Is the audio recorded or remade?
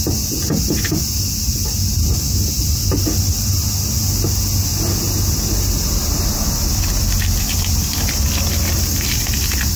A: recorded